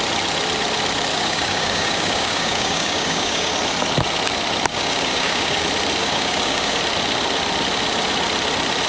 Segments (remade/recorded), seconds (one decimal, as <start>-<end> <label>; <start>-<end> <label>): 0.0-1.1 recorded; 1.1-3.5 remade; 3.5-4.7 recorded; 4.7-5.6 remade; 5.6-6.0 recorded; 6.0-6.8 remade; 6.8-8.9 recorded